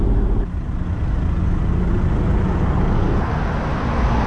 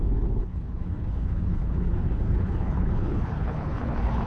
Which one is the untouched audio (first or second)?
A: first